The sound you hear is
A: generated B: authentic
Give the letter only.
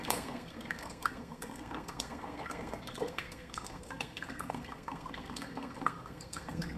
A